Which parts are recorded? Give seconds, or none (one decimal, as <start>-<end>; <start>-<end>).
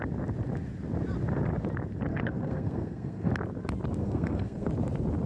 0.0-2.1; 3.3-4.0; 4.7-5.3